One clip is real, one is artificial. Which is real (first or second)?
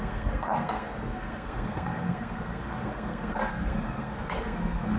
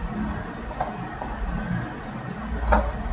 second